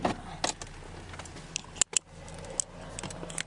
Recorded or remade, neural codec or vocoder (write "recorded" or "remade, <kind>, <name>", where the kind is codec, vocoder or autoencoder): recorded